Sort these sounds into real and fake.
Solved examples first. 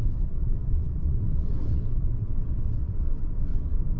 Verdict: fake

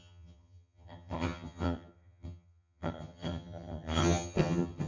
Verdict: fake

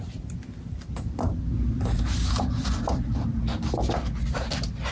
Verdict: real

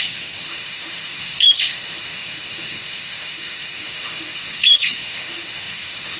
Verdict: fake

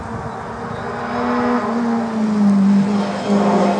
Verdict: real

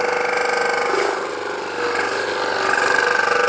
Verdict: real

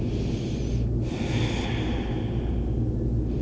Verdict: real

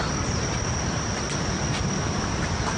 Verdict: real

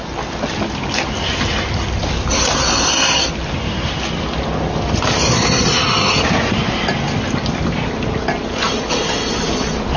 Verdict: real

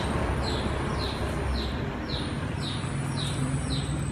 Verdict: real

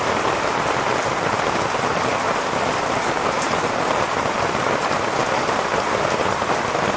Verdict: real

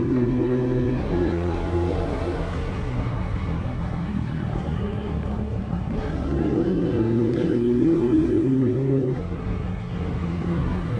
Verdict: fake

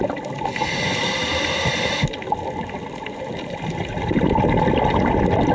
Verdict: real